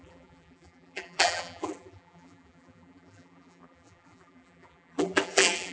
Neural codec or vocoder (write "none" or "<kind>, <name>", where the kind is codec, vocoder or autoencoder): vocoder, BigVGAN v2